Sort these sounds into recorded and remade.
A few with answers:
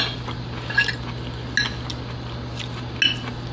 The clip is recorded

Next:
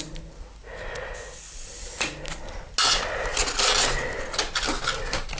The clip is recorded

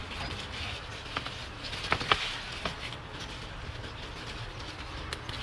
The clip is recorded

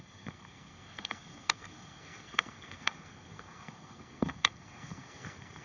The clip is remade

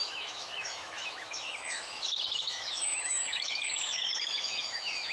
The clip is remade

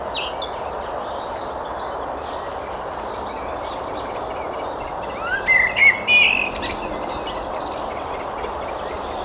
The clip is recorded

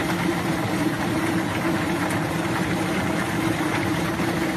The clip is remade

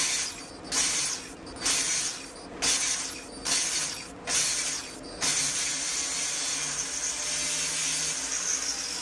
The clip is recorded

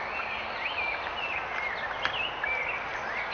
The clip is recorded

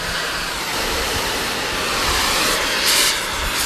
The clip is remade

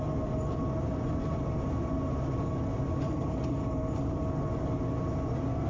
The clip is recorded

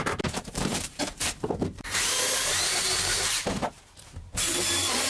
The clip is remade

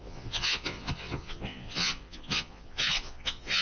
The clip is remade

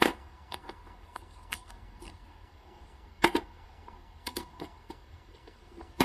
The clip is remade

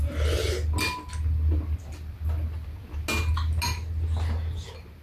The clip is recorded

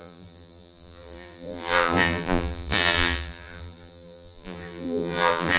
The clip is remade